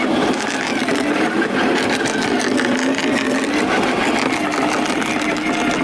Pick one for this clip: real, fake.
real